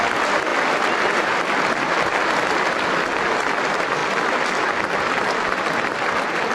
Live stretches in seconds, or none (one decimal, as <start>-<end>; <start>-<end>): 0.0-6.5